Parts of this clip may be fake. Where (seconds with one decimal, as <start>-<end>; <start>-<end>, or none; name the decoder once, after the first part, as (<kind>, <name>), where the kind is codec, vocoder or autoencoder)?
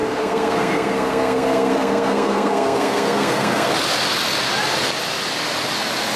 0.0-3.7 (codec, SNAC)